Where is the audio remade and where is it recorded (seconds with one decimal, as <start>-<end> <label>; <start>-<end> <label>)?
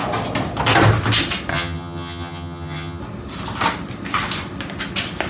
0.0-1.5 recorded; 1.5-3.0 remade; 3.0-5.3 recorded